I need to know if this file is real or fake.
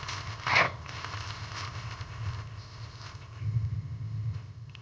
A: fake